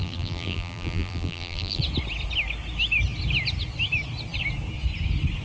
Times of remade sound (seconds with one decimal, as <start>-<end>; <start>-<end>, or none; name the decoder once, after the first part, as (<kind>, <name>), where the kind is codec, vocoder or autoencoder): 0.0-1.8 (vocoder, BigVGAN v2)